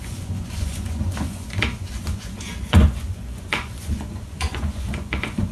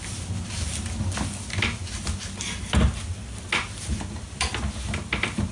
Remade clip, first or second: first